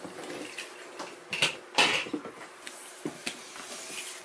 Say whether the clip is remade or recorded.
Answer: recorded